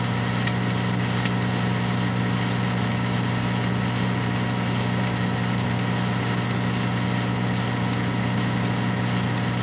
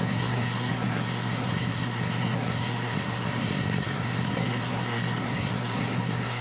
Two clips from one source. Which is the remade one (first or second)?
second